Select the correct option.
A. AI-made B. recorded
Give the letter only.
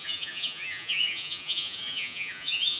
A